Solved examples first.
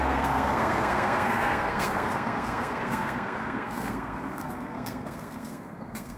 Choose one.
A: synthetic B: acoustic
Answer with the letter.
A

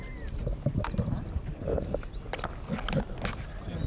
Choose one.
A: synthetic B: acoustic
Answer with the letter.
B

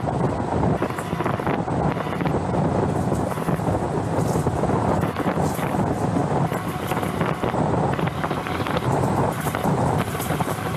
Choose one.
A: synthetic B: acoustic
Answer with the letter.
B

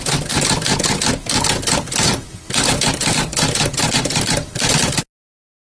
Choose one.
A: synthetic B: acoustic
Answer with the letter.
B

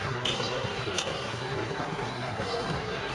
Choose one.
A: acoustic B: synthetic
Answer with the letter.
B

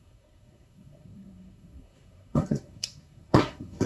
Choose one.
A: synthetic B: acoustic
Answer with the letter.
A